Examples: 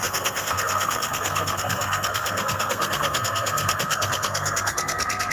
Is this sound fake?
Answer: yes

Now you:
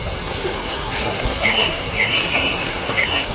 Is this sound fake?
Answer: yes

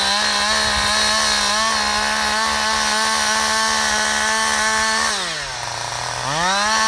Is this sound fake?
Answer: no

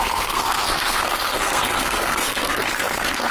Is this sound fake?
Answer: yes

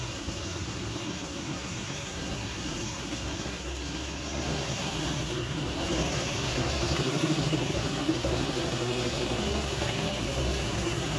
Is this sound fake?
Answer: yes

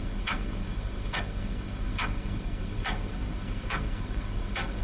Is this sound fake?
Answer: yes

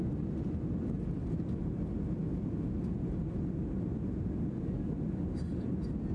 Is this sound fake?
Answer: no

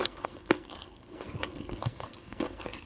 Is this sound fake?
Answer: yes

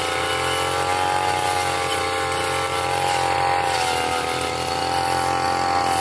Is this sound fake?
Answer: no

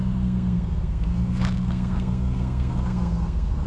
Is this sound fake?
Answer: yes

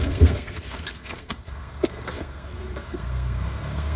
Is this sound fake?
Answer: yes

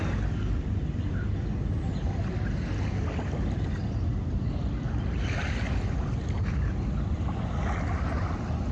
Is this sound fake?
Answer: no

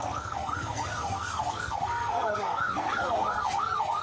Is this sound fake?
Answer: yes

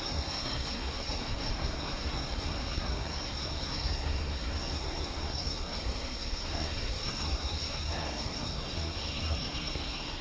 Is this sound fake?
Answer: yes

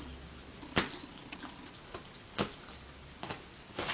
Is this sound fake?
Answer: no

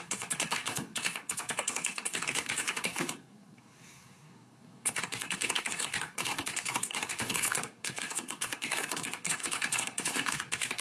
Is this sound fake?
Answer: yes